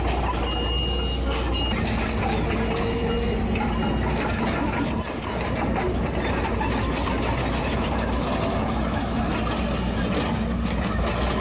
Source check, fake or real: real